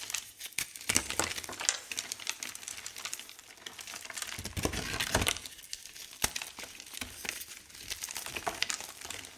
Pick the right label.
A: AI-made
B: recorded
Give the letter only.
B